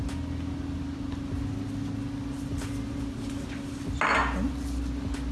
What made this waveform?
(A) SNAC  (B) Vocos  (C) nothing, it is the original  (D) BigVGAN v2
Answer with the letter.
C